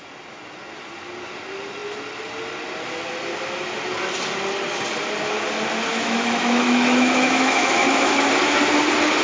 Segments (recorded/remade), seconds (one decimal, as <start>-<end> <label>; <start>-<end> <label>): 0.0-5.9 recorded; 5.9-8.3 remade; 8.3-9.2 recorded